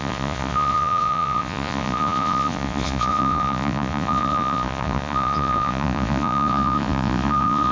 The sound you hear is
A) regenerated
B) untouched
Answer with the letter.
A